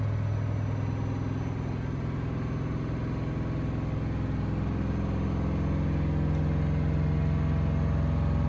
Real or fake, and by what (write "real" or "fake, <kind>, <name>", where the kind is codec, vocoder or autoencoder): real